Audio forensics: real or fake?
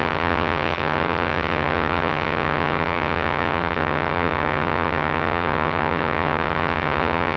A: fake